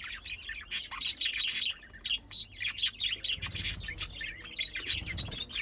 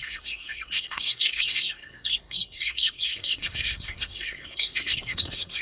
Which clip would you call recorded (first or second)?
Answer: first